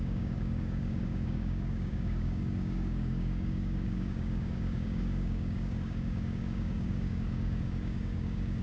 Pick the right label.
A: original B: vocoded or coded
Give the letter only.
B